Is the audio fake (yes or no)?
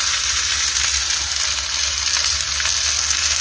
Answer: no